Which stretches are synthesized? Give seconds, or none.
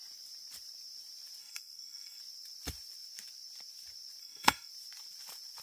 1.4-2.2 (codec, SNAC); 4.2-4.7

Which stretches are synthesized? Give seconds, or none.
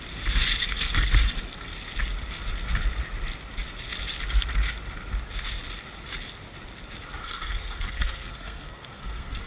0.6-1.7 (codec, SNAC); 7.2-9.5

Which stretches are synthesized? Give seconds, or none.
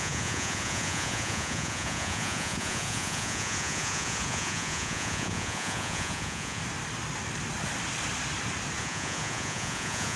0.0-6.6 (vocoder, Vocos); 8.8-10.2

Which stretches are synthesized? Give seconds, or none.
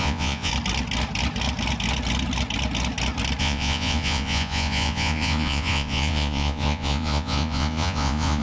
0.0-0.5 (vocoder, Vocos); 3.4-8.4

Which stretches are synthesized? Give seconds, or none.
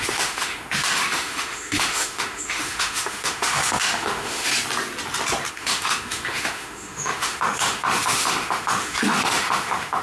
0.0-4.5 (autoencoder, DAC-VAE); 5.5-10.0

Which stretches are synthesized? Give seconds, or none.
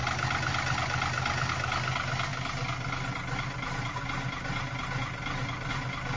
none